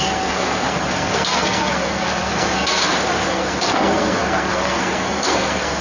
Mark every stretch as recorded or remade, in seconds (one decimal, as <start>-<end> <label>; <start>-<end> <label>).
0.0-2.8 remade; 2.8-3.3 recorded; 3.3-5.8 remade